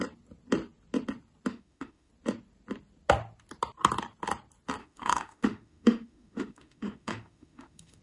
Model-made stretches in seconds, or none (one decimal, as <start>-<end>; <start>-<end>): 1.5-2.1; 4.8-8.0